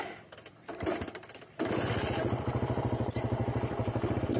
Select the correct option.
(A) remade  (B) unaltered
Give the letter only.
A